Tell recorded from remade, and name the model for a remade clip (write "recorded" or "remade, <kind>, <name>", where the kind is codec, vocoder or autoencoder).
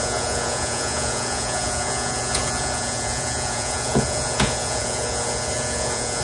remade, vocoder, Vocos